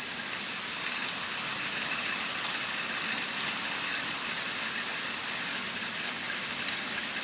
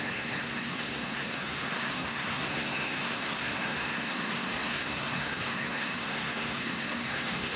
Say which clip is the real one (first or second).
first